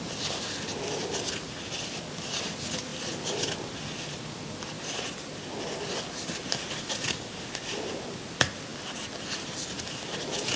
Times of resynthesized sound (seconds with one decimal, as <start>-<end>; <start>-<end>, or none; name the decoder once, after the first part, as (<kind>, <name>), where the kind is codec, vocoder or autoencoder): none